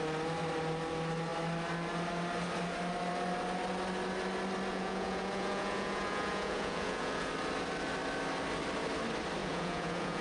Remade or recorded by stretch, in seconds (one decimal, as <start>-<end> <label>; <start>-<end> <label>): 0.0-4.7 recorded; 4.7-7.3 remade; 7.3-9.4 recorded; 9.4-10.2 remade